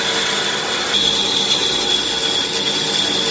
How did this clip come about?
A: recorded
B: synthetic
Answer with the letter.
A